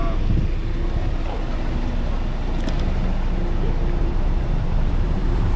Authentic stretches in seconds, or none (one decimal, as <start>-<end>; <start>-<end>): 0.0-4.0